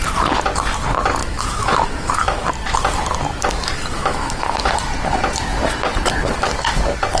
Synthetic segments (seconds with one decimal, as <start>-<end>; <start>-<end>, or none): 1.2-2.5; 4.0-4.7